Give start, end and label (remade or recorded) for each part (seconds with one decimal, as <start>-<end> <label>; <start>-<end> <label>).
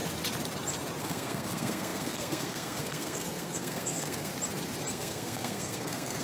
0.0-1.0 recorded; 1.0-4.3 remade; 4.3-4.9 recorded; 4.9-6.2 remade